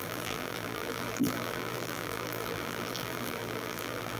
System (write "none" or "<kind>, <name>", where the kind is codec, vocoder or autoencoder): vocoder, BigVGAN v2